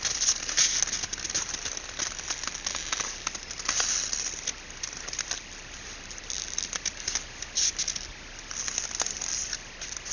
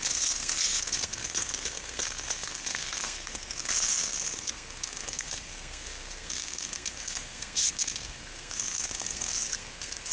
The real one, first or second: first